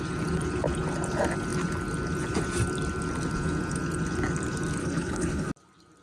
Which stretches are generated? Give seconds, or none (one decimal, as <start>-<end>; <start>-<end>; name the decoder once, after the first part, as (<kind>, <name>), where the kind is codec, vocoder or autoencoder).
4.8-5.5 (codec, HILCodec)